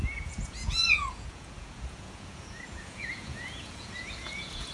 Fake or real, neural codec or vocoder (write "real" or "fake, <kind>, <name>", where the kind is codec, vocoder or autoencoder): fake, vocoder, Vocos